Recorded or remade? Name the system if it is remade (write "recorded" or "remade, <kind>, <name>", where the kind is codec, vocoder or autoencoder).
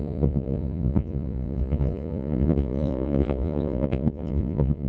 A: remade, vocoder, Vocos